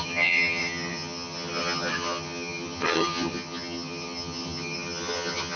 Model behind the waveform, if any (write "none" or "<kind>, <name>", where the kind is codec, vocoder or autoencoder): vocoder, HiFi-GAN